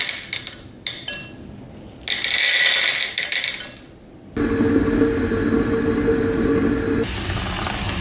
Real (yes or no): yes